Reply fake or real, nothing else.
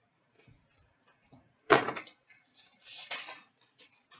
fake